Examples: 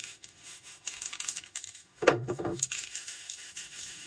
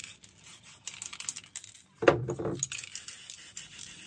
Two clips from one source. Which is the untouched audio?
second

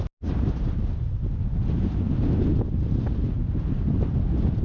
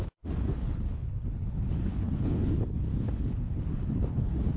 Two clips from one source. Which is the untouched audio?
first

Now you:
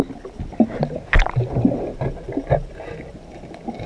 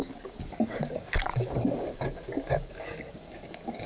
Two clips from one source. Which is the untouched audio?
first